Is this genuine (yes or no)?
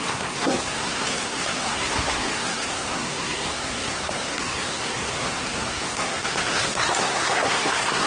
no